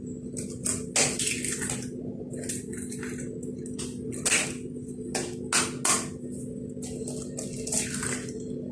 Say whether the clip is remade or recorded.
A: recorded